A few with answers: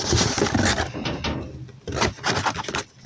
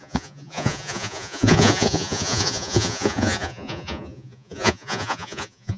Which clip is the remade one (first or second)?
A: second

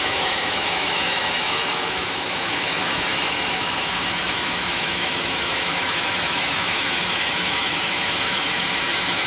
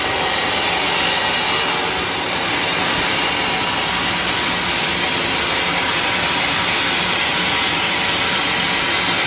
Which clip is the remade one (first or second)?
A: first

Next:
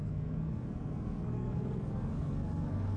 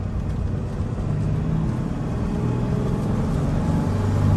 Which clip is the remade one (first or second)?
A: first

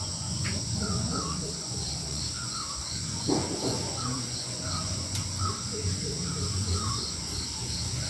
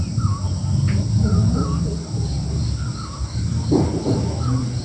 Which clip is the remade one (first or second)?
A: first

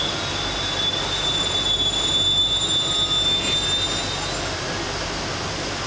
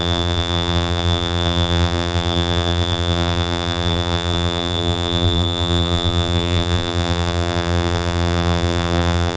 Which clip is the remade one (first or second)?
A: second